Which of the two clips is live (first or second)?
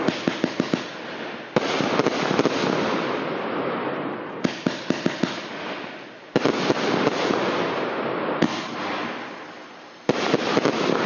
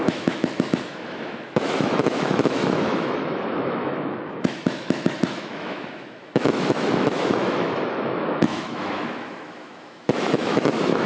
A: first